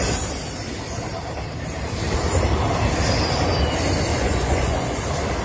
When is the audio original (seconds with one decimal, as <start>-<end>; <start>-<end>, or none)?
0.0-4.1; 5.0-5.4